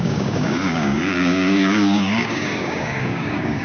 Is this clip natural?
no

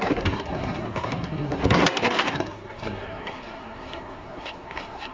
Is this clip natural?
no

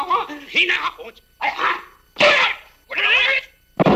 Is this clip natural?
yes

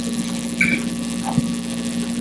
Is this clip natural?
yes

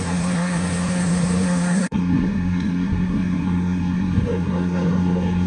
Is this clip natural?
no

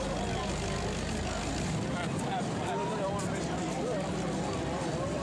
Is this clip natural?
yes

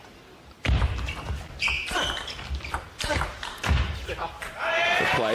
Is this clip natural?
yes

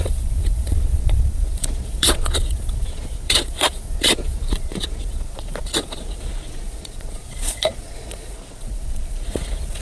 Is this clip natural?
no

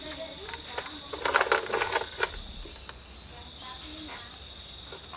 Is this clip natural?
yes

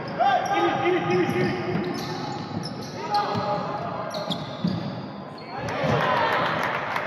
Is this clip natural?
yes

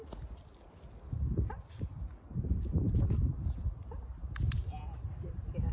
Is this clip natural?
yes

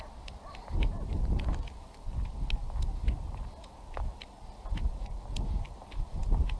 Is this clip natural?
yes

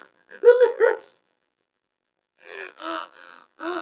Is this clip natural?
no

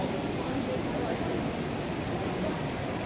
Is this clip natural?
yes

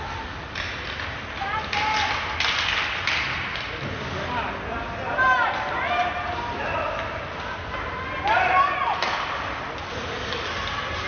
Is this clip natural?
yes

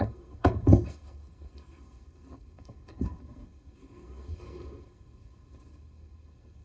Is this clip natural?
no